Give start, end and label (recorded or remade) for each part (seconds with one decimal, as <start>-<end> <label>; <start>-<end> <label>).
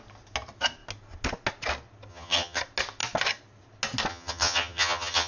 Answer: 0.0-2.1 recorded; 2.1-2.6 remade; 2.6-4.1 recorded; 4.1-5.3 remade